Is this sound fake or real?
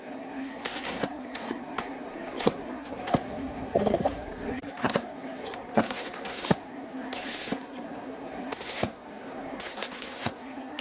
fake